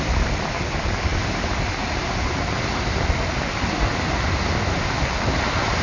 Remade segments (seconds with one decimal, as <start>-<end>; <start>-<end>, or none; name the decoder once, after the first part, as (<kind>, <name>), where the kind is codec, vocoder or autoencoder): none